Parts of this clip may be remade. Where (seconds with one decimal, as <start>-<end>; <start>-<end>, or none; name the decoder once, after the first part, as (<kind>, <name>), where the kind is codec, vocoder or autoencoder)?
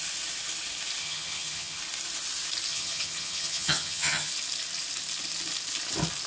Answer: 1.0-1.8 (vocoder, HiFi-GAN); 2.7-4.3